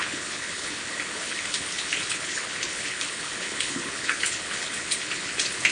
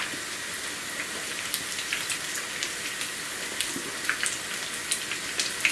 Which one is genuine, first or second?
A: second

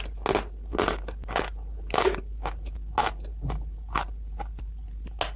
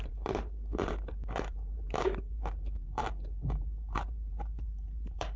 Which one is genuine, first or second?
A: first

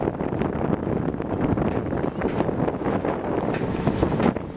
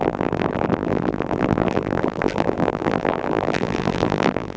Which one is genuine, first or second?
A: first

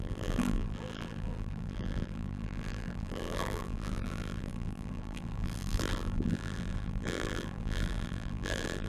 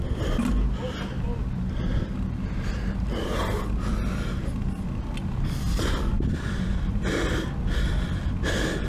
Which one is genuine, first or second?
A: second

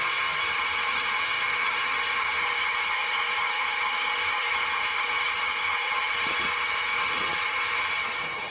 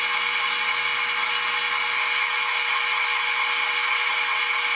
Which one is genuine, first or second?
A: second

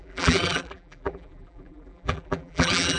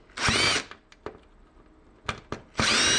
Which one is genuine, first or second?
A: second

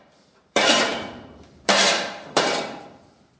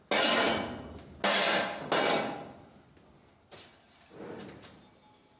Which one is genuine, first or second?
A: second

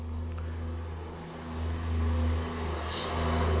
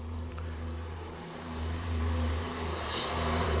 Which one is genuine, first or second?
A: first